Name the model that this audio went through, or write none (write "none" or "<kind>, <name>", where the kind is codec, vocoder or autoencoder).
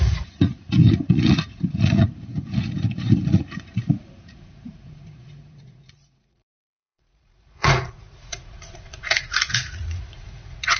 vocoder, Vocos